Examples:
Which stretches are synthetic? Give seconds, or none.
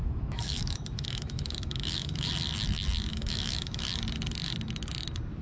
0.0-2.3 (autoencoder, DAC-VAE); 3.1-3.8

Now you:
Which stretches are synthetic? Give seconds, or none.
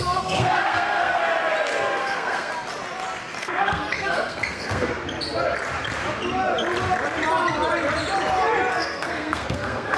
0.0-1.2 (codec, SNAC); 2.0-2.5; 3.4-4.9; 8.7-10.0